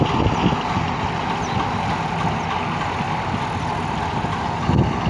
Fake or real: real